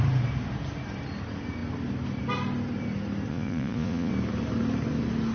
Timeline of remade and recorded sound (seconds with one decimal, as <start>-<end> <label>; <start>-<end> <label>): 0.0-3.3 recorded; 3.3-4.1 remade; 4.1-5.3 recorded